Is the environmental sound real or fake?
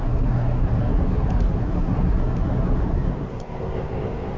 fake